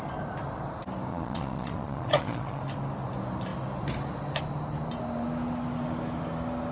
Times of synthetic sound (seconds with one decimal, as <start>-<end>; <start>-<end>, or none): 1.1-2.6

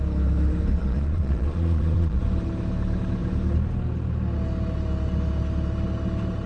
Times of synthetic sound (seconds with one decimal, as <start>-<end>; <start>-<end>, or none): 0.8-2.2

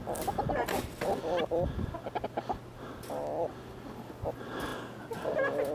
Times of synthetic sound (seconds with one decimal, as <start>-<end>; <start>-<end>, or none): none

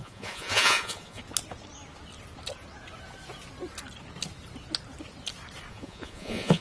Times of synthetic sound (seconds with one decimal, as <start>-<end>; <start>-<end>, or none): 0.0-1.2; 5.7-6.6